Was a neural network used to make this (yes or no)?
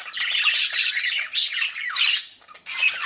no